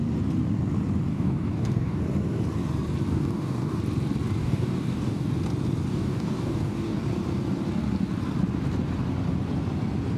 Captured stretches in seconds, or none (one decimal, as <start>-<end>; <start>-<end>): 0.0-1.1; 2.0-3.1; 3.8-4.4; 5.3-5.9; 7.0-10.2